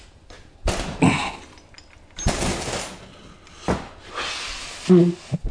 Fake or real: real